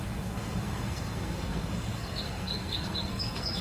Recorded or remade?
remade